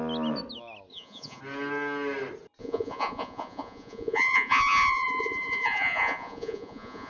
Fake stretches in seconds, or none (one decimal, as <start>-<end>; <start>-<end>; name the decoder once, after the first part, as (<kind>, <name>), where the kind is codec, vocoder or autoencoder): 0.9-1.4 (vocoder, Vocos); 2.6-7.1